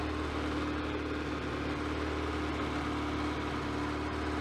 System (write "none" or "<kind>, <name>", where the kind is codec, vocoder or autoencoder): none